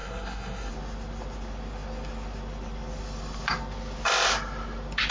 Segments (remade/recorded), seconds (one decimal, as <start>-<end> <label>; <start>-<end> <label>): 0.0-0.7 remade; 0.7-5.1 recorded